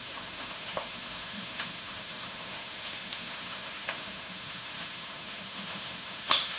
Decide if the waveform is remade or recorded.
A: remade